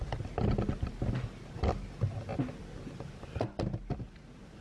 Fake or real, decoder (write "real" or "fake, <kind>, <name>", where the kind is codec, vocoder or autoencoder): real